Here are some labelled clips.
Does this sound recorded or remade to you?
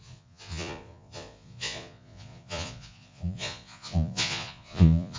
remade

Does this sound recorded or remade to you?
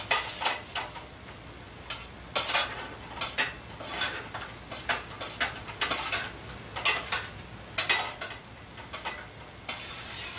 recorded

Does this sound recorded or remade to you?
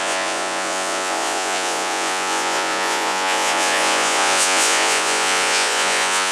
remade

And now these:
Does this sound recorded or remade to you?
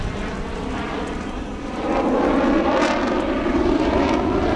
recorded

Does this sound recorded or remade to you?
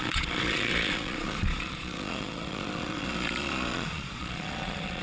remade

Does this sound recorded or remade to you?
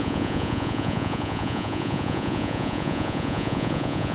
remade